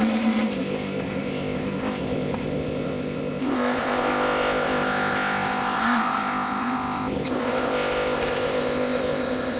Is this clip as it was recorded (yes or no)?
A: no